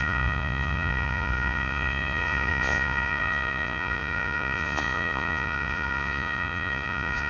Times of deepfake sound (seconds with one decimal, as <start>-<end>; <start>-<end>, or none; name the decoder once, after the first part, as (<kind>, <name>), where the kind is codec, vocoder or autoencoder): 0.0-7.3 (vocoder, Vocos)